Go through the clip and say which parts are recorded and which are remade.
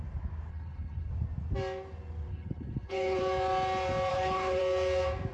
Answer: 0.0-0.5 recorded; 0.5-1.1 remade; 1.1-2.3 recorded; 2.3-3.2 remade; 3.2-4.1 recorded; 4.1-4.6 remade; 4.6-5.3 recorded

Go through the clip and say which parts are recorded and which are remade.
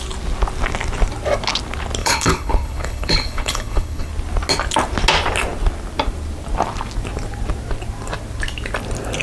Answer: 0.0-2.0 recorded; 2.0-4.1 remade; 4.1-9.2 recorded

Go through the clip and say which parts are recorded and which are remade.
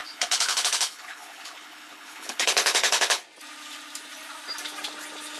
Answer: 0.0-3.2 remade; 3.2-5.4 recorded